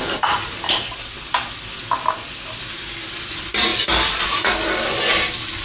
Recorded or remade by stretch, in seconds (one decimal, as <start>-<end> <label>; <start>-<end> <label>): 0.0-3.7 remade; 3.7-5.6 recorded